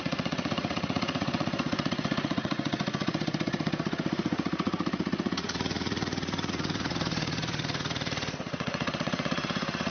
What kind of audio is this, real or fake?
fake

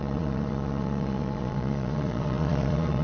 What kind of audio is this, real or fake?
fake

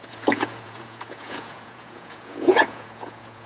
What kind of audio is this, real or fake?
fake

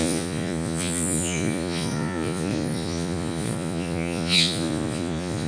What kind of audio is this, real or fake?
fake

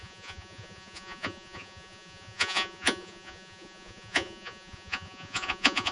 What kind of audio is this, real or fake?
fake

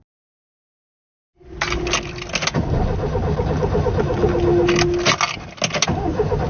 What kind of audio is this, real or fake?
real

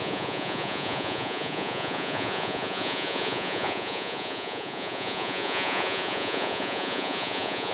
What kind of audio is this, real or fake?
fake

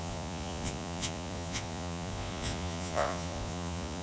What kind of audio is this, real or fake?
fake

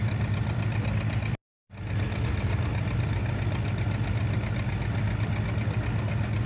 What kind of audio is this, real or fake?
real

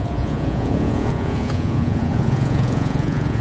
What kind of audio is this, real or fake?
fake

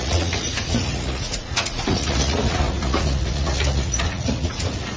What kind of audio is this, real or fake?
fake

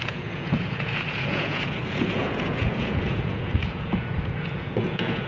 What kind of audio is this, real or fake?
fake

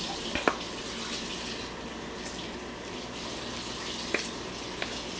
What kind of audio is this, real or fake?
real